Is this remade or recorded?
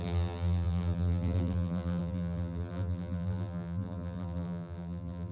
remade